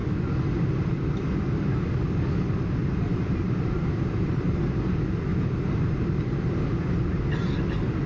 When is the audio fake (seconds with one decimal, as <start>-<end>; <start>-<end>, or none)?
2.8-4.6; 5.3-6.5